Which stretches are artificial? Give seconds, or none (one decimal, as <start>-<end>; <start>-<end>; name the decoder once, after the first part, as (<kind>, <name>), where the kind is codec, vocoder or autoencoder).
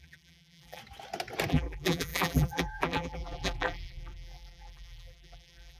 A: 0.0-0.8 (vocoder, BigVGAN v2); 1.5-5.8